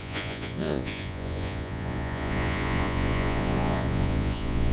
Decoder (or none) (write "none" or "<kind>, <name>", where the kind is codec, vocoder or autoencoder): vocoder, Vocos